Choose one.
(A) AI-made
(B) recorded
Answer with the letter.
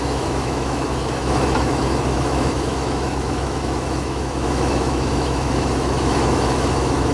A